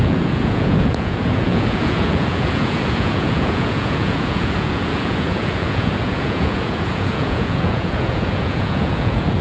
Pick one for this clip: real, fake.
fake